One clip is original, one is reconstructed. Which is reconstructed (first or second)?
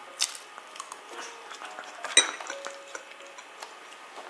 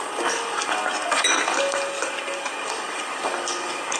second